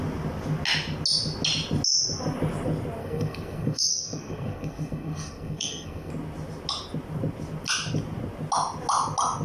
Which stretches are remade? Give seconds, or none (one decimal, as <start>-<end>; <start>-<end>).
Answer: 3.0-6.1